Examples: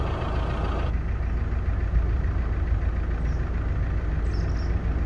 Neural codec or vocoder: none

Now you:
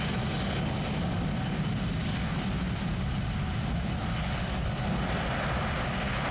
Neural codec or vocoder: none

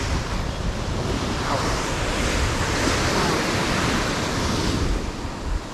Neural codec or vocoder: none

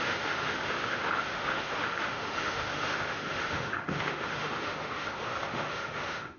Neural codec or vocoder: autoencoder, DAC-VAE